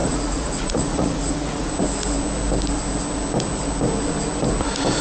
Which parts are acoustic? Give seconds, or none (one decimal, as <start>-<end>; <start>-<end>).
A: 1.7-5.0